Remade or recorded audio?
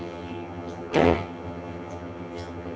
remade